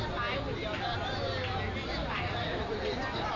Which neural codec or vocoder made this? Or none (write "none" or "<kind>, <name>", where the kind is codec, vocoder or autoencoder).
none